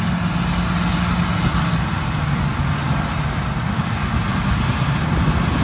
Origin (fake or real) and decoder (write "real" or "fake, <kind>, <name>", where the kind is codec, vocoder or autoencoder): real